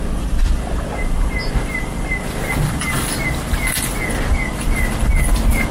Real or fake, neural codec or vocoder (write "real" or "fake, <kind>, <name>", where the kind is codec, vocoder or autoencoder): real